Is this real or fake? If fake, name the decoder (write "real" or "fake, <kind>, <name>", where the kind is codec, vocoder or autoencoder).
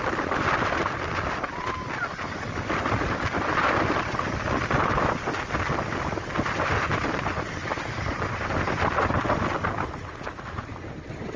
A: real